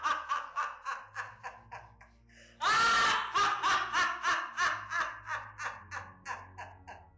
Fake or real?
real